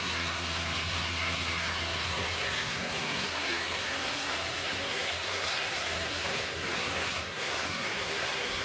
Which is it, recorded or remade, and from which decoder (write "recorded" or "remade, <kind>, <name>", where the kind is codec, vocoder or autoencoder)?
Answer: remade, codec, SNAC